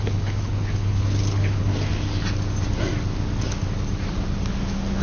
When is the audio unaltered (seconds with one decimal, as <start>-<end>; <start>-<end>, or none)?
1.7-5.0